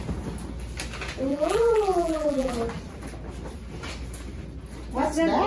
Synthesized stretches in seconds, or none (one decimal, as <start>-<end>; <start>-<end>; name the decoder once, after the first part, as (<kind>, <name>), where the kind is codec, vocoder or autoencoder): 1.3-2.5 (vocoder, BigVGAN v2)